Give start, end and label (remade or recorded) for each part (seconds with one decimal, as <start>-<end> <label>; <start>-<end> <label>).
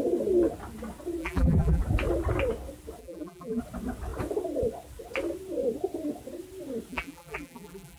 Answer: 0.0-1.2 recorded; 1.2-1.8 remade; 1.8-3.0 recorded; 3.0-3.6 remade; 3.6-6.9 recorded; 6.9-8.0 remade